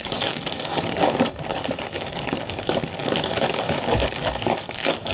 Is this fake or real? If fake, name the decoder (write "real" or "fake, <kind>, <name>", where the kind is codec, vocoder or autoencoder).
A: fake, codec, DAC